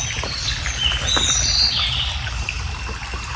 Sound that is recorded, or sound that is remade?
recorded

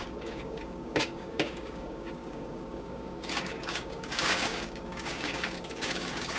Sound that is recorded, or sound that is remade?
remade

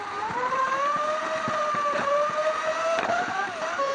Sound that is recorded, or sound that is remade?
remade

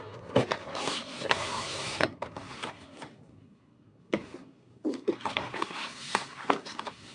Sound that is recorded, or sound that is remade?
remade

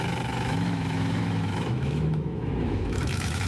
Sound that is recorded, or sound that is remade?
remade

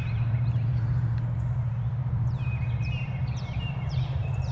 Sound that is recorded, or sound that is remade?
remade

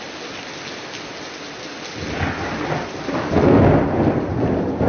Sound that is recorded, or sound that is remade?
recorded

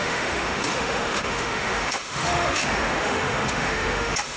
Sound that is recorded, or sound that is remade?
remade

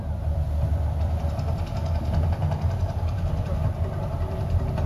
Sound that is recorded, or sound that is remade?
recorded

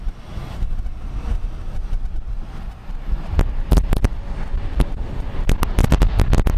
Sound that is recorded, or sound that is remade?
recorded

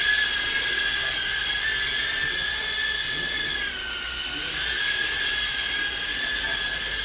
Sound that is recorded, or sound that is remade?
recorded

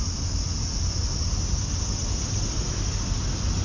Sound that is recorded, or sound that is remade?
recorded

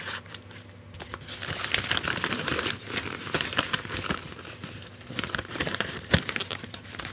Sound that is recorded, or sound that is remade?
remade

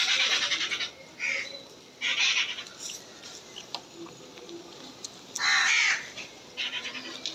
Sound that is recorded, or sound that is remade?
recorded